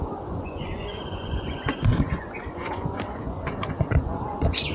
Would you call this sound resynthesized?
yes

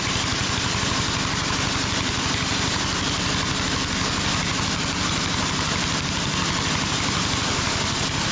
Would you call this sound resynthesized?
no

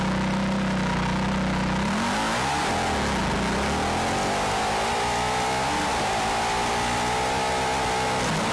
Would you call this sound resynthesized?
no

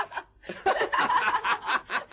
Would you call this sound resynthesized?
no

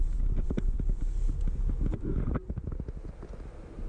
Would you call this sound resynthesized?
no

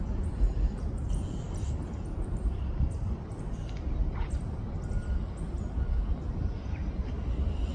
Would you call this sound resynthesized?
no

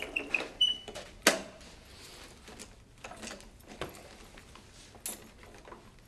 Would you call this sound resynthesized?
no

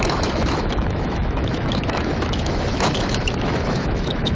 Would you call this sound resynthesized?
yes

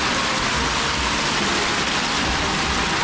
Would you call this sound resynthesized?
no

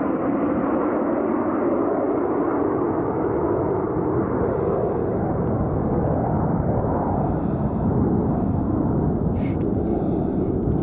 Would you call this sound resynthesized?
no